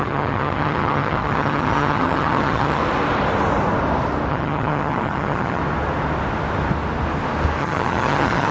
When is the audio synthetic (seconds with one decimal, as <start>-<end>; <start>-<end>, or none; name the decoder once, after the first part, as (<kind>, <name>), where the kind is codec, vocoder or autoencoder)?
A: 0.0-2.8 (vocoder, HiFi-GAN); 4.3-5.6; 7.6-8.5